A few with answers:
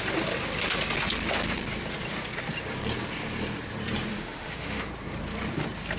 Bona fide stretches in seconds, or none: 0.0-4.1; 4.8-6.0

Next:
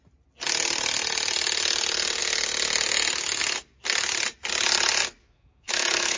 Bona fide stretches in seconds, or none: 0.0-5.2

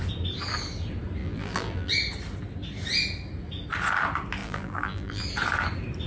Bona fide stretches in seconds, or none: 0.0-1.2; 1.9-4.4; 5.2-6.1

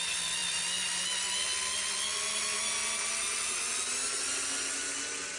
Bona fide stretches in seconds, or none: 0.0-5.4

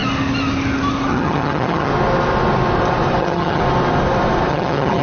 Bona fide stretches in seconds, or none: 0.0-1.1; 1.9-3.2; 3.6-4.5

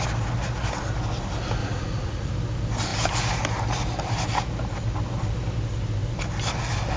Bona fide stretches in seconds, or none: 0.0-1.6; 2.3-7.0